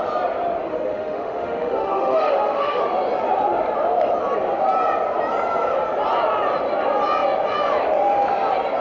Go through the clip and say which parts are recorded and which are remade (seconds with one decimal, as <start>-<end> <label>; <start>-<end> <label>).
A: 0.0-0.7 recorded; 0.7-2.8 remade; 2.8-8.8 recorded